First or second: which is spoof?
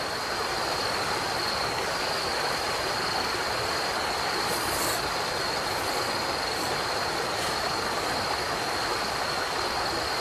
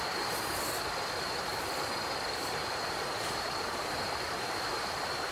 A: second